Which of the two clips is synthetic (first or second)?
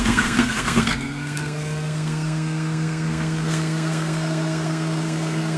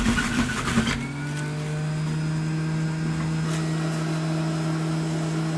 first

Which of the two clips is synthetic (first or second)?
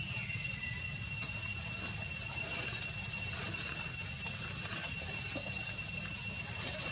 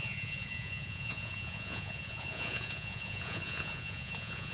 second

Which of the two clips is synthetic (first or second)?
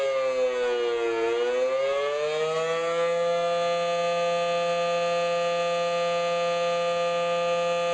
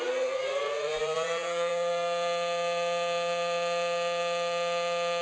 second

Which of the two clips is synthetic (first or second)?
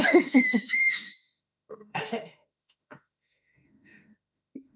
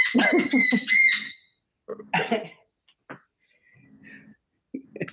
first